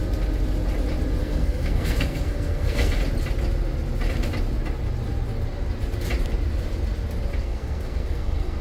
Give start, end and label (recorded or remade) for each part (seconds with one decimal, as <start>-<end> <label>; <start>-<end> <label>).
0.0-1.2 recorded; 1.2-3.0 remade; 3.0-7.4 recorded; 7.4-8.6 remade